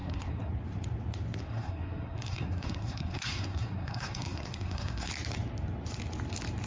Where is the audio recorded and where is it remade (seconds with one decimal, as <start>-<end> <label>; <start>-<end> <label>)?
0.0-0.5 remade; 0.5-1.4 recorded; 1.4-5.1 remade; 5.1-6.7 recorded